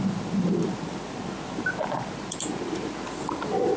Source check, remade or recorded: recorded